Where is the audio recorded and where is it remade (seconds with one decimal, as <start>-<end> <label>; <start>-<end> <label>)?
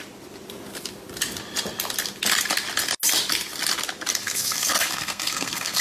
0.0-4.2 recorded; 4.2-5.8 remade